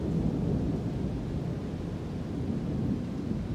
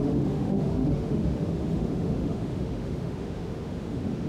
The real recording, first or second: first